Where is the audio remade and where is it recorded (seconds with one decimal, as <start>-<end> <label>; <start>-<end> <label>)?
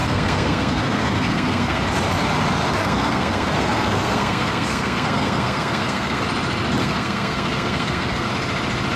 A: 0.0-1.8 remade; 1.8-2.8 recorded; 2.8-6.2 remade; 6.2-6.8 recorded; 6.8-8.3 remade; 8.3-9.0 recorded